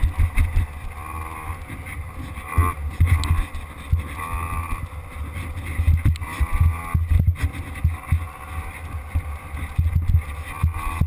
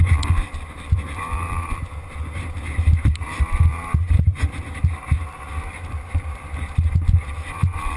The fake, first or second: second